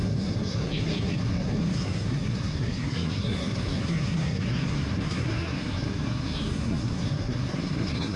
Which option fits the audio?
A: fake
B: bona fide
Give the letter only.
A